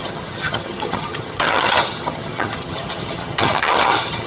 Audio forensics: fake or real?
fake